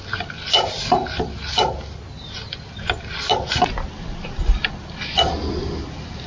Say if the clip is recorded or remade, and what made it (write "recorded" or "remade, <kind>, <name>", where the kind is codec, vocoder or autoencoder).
recorded